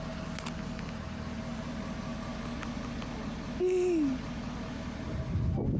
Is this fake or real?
real